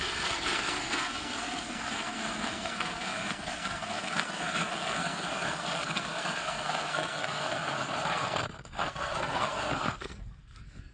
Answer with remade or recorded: remade